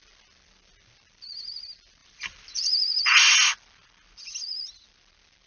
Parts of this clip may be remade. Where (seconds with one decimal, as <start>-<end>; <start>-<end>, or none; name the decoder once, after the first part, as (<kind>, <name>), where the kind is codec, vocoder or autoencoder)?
2.0-3.2 (vocoder, BigVGAN v2)

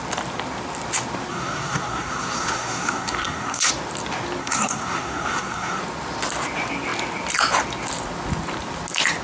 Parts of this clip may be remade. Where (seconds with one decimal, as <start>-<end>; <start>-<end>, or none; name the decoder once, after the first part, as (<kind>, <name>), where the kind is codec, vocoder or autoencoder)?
1.3-3.7 (codec, SNAC); 4.4-5.8

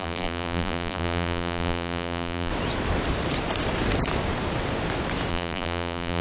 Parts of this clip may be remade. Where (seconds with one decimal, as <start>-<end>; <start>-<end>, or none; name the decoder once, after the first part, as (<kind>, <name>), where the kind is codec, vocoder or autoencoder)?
0.0-2.5 (vocoder, BigVGAN v2); 5.3-6.2

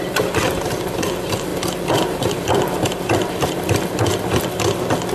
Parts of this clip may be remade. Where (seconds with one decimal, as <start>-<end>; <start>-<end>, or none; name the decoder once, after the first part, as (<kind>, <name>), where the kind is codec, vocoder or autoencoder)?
0.0-5.1 (vocoder, BigVGAN v2)

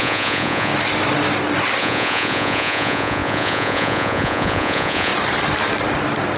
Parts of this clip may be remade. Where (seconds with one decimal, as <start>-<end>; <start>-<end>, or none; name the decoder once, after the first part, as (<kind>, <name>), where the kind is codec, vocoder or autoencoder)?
0.0-0.7 (vocoder, Vocos); 1.8-5.1

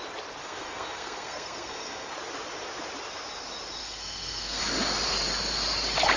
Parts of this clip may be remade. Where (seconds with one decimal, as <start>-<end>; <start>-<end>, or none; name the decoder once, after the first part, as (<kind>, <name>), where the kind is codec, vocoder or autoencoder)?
0.4-2.1 (codec, SNAC); 3.8-4.6

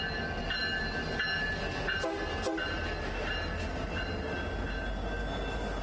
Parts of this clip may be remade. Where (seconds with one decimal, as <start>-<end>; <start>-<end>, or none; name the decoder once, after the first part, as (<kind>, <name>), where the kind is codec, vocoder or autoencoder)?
none